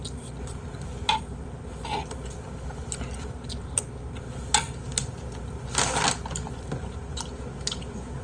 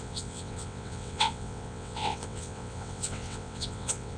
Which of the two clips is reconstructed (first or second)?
second